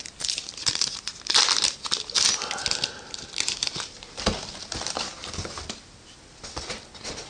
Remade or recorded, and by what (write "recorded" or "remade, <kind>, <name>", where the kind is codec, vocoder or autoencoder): recorded